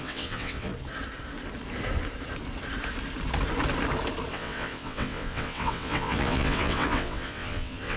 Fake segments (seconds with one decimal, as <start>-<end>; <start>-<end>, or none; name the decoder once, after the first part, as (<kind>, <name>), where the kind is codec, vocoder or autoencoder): 0.0-0.7 (vocoder, WaveNeXt); 4.3-8.0